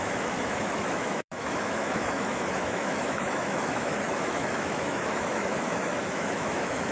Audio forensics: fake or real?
fake